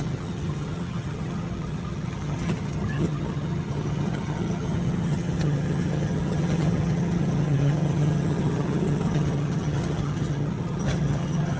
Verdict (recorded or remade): remade